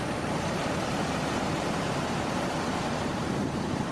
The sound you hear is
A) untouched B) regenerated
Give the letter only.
B